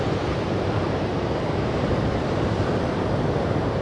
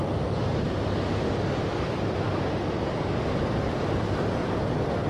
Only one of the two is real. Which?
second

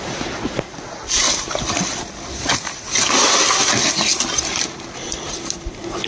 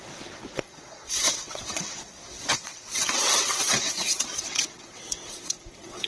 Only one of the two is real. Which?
first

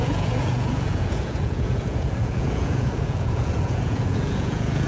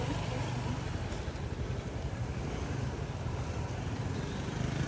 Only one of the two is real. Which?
second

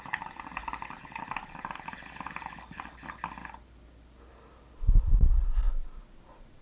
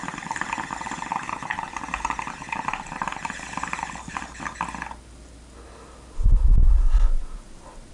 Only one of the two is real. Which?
second